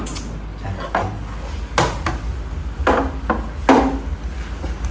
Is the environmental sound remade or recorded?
recorded